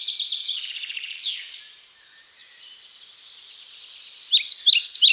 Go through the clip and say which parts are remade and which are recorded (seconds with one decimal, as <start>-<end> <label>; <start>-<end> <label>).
0.0-0.4 recorded; 0.4-1.6 remade; 1.6-5.1 recorded